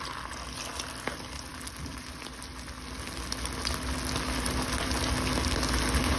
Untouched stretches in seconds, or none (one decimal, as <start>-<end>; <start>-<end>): 0.0-6.2